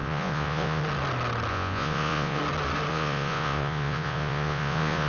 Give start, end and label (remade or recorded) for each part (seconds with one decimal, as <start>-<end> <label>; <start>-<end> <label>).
0.0-0.8 remade; 0.8-1.5 recorded; 1.5-2.4 remade; 2.4-2.9 recorded; 2.9-5.1 remade